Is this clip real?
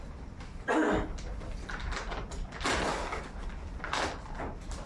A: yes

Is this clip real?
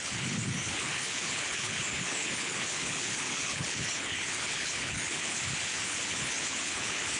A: no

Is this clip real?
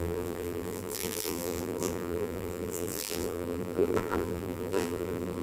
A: no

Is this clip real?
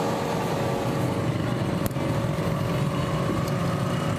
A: yes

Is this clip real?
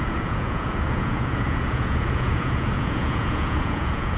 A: no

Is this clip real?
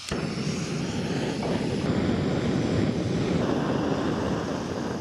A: yes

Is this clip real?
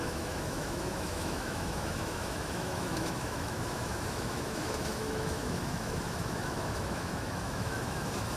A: no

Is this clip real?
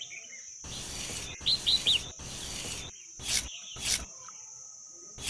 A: yes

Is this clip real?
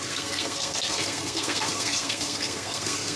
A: no